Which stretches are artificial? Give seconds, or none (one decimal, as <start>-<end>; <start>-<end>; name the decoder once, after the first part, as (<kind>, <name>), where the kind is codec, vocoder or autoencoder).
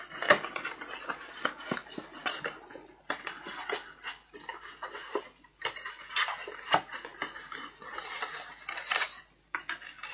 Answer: none